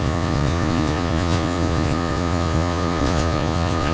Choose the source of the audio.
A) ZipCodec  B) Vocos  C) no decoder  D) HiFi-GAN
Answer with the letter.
B